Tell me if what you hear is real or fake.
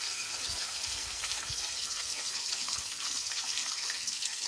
fake